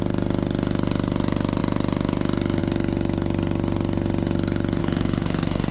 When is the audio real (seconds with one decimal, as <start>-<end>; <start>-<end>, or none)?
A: 0.0-4.8